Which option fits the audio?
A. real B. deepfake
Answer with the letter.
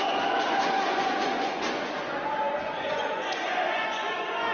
B